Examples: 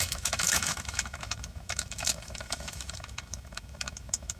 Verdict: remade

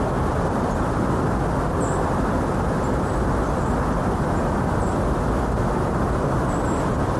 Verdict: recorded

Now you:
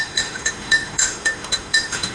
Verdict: remade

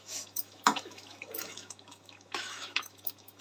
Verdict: remade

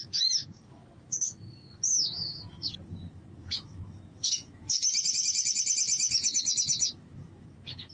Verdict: remade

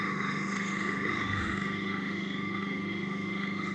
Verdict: remade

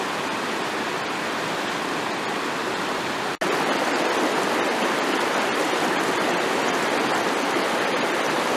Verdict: recorded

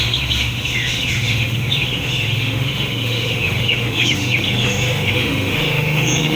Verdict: remade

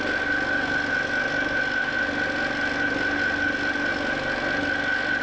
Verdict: recorded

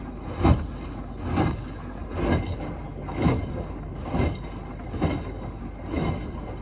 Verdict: recorded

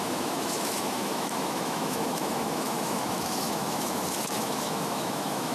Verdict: remade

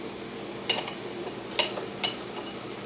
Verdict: recorded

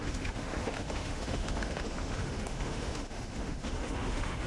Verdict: remade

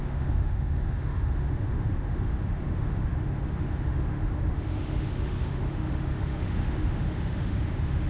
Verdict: remade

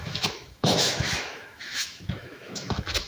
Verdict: remade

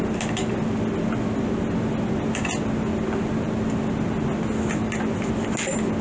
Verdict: recorded